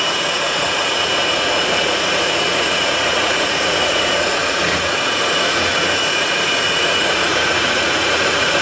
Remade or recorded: remade